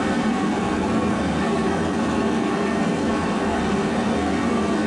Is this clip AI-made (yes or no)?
yes